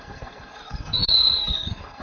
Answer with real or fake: fake